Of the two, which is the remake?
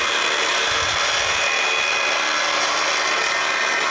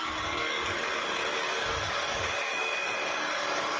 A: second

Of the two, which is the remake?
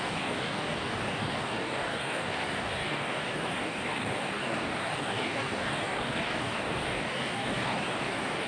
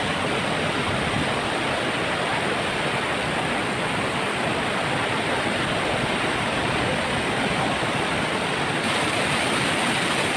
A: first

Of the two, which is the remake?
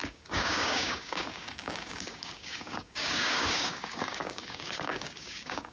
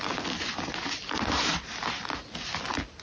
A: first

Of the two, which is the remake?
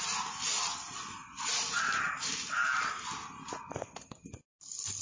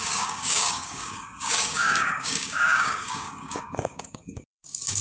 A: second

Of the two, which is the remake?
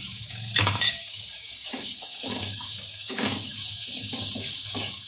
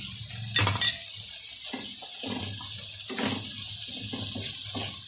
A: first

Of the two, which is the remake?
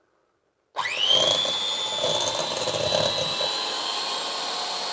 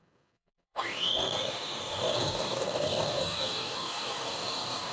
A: second